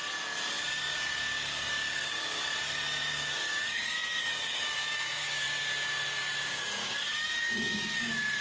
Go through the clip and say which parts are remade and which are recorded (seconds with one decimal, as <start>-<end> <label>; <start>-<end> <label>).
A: 0.0-0.6 recorded; 0.6-2.4 remade; 2.4-3.1 recorded; 3.1-8.4 remade